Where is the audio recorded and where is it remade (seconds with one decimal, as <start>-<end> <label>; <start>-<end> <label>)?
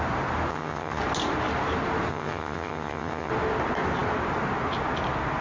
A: 0.0-0.5 recorded; 0.5-1.0 remade; 1.0-2.1 recorded; 2.1-3.3 remade; 3.3-5.4 recorded